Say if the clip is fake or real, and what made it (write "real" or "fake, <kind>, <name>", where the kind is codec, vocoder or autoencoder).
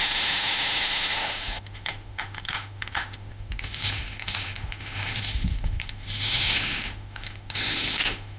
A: fake, autoencoder, DAC-VAE